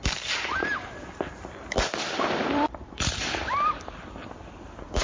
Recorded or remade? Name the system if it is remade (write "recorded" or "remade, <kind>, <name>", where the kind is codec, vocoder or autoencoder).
remade, vocoder, BigVGAN v2